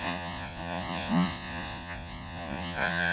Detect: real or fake fake